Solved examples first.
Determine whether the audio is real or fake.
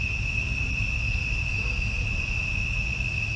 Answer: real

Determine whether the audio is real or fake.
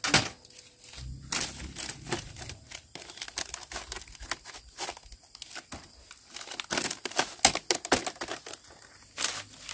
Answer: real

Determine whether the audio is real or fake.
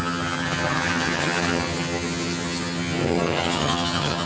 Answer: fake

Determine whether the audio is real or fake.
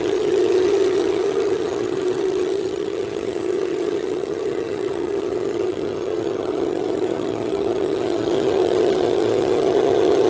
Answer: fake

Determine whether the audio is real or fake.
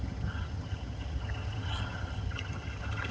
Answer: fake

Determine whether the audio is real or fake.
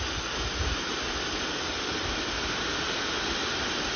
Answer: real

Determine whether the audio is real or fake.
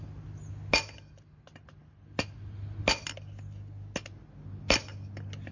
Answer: real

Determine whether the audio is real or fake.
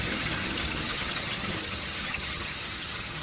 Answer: fake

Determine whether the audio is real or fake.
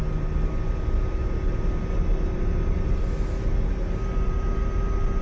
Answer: real